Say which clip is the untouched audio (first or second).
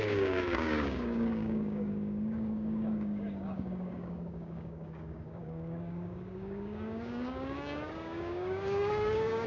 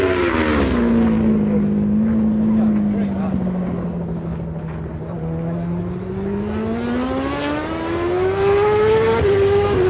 second